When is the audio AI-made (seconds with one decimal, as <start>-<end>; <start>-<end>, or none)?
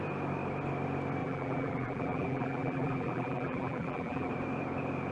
1.2-4.3